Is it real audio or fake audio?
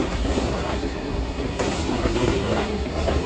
fake